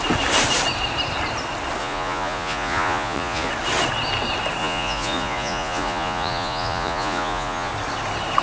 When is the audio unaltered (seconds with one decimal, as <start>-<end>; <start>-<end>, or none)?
0.0-1.8; 3.5-4.6; 7.7-8.4